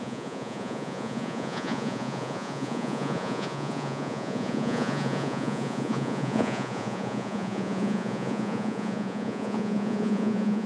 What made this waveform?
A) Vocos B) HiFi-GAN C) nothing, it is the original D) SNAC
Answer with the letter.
A